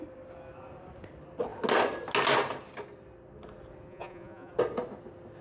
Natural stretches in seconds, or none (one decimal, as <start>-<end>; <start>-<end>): 0.0-3.9; 4.5-5.4